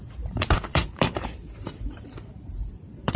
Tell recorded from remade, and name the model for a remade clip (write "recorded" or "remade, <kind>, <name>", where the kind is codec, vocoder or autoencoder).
remade, vocoder, BigVGAN v2